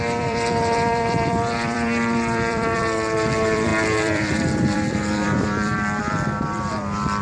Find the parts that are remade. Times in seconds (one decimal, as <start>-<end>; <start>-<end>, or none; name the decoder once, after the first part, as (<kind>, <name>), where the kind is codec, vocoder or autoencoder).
0.0-7.2 (vocoder, BigVGAN v2)